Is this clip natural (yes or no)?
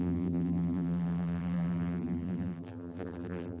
no